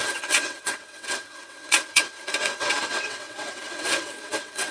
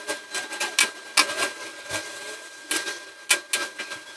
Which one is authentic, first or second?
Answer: second